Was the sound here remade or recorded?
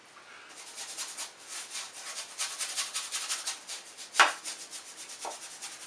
recorded